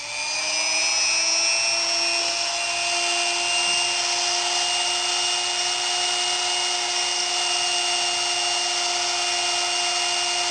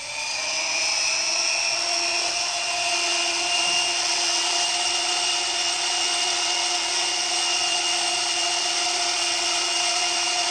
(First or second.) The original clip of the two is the first